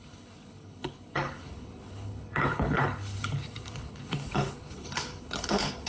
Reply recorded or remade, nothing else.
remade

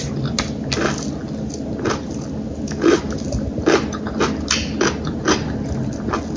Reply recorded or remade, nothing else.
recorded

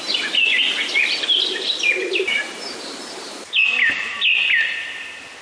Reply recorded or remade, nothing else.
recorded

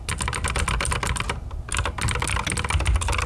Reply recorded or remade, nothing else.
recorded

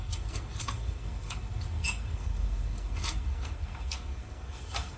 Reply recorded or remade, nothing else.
remade